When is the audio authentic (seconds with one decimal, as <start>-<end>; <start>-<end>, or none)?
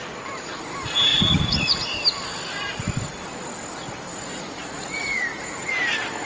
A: 0.0-1.1; 1.8-4.1; 5.7-6.3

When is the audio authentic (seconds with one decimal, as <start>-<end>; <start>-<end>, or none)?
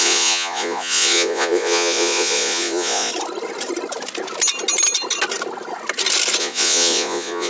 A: 3.1-6.4